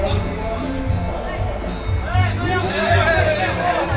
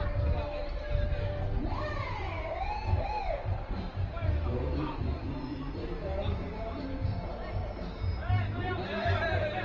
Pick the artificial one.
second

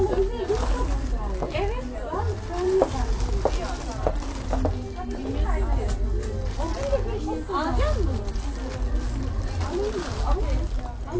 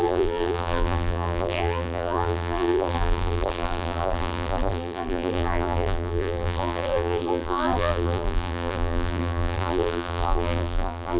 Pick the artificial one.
second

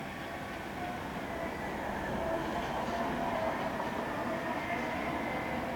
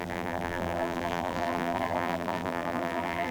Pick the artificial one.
second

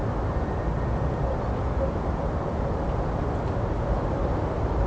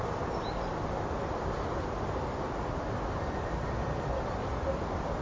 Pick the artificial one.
second